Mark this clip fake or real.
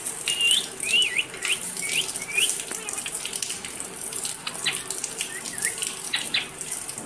real